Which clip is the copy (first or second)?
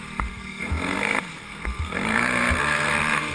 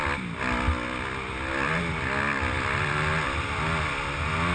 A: first